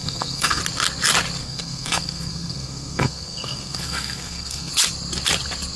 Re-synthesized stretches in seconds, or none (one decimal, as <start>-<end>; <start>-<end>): 0.0-0.6; 1.4-4.7